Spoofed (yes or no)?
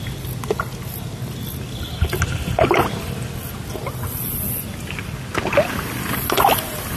no